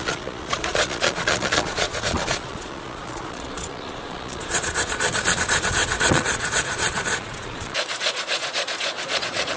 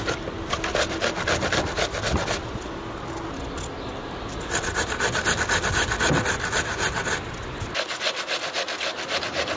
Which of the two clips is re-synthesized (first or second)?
first